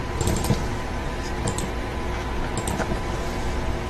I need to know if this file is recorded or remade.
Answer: recorded